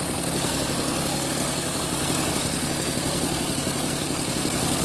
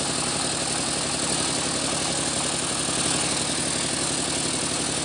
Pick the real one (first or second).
second